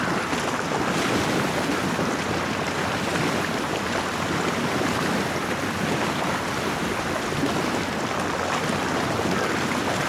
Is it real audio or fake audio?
real